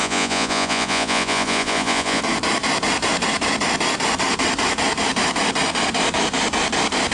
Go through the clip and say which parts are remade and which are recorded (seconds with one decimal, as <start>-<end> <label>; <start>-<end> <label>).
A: 0.0-2.2 remade; 2.2-7.1 recorded